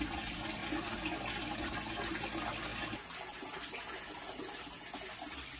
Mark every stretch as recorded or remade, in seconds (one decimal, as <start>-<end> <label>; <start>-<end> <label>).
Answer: 0.0-5.6 recorded